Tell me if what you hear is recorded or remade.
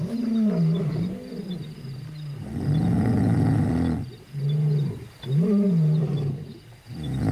recorded